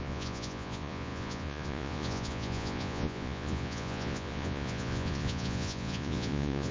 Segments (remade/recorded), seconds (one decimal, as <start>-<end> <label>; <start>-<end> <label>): 0.0-6.7 remade